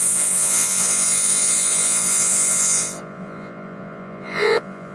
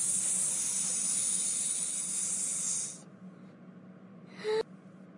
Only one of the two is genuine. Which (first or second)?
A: second